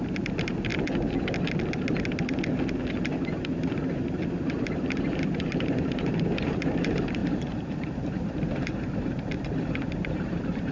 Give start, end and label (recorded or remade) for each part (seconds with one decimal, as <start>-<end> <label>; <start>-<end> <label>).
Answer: 0.0-0.7 remade; 0.7-3.0 recorded; 3.0-10.7 remade